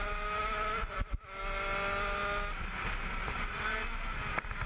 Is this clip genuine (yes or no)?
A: yes